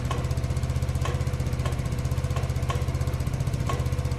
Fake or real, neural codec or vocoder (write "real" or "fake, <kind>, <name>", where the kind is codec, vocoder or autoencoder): real